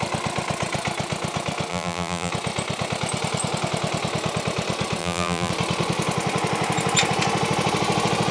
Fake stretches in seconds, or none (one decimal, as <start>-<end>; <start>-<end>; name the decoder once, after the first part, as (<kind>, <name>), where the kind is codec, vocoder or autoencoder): 1.7-2.3 (vocoder, BigVGAN v2); 5.0-5.5